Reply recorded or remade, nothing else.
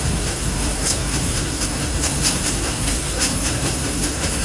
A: remade